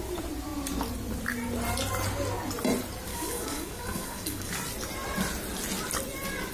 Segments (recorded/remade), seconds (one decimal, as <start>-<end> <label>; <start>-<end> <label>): 0.0-3.1 recorded; 3.1-4.5 remade; 4.5-6.5 recorded